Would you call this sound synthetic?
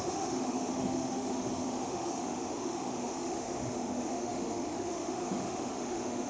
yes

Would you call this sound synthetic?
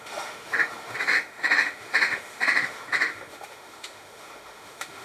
yes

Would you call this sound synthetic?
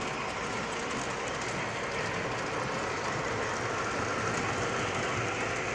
no